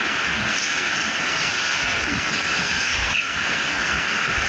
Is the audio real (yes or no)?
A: no